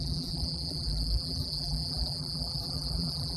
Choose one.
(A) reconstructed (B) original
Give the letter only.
A